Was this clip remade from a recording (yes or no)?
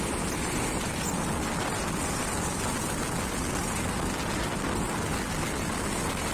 no